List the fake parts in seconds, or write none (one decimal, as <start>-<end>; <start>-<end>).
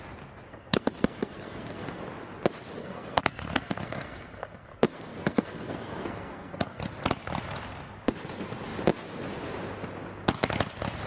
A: 0.5-2.0; 2.8-6.8